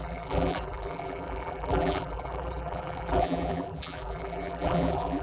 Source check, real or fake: fake